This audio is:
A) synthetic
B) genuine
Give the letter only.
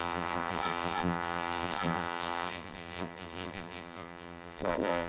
A